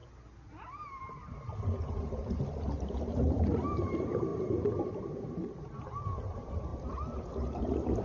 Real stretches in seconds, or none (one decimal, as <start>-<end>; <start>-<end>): 0.0-1.0; 1.5-2.1; 4.3-5.0; 6.7-7.2